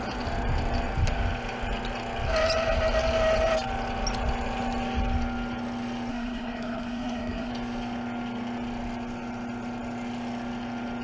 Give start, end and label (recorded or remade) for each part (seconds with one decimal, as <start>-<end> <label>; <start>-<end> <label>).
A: 0.0-6.1 recorded; 6.1-7.5 remade; 7.5-11.0 recorded